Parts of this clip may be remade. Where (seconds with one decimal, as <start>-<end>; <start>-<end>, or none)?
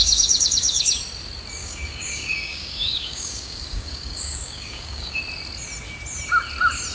0.0-1.0; 1.6-5.2